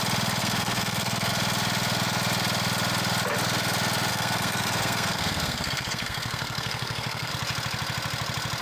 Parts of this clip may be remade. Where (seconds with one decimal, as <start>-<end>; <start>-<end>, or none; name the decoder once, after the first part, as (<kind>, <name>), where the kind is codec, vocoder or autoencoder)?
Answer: 0.4-1.3 (codec, SNAC); 4.1-7.3